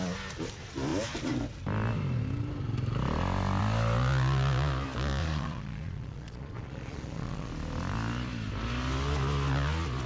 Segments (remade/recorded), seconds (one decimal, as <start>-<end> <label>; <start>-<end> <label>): 0.0-5.2 recorded; 5.2-7.5 remade; 7.5-10.1 recorded